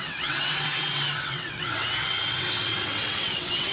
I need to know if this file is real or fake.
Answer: fake